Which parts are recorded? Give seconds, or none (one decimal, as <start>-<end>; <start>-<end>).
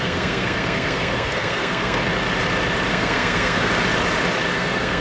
2.0-2.9; 3.7-4.5